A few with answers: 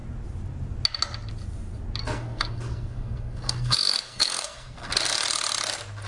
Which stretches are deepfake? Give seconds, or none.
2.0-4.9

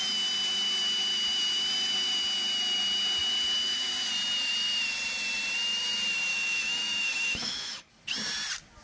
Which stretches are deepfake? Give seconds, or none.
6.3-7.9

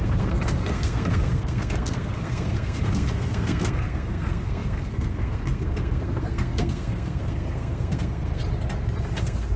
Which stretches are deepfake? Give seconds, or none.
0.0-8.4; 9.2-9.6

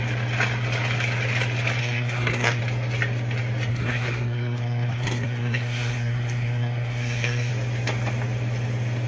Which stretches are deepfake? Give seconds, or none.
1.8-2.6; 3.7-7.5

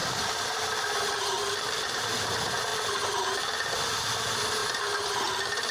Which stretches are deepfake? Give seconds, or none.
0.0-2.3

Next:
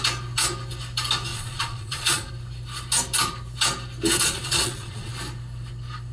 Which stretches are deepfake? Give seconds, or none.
1.3-2.3; 4.2-5.1

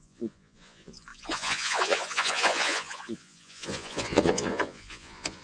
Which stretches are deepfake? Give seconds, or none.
0.0-5.4

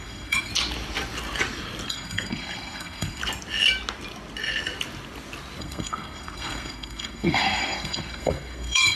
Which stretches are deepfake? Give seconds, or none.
0.0-0.5; 1.9-3.2; 5.6-9.0